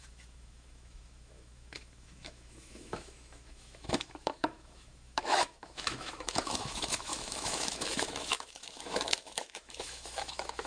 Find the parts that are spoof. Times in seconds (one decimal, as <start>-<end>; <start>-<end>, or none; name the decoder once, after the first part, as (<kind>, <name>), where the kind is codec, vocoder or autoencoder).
0.0-10.7 (autoencoder, DAC-VAE)